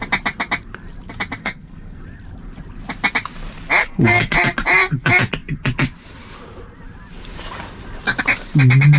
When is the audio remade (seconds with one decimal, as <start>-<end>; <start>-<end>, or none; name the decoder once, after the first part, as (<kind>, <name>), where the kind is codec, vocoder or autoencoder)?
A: 1.4-2.0 (codec, SNAC); 3.8-4.3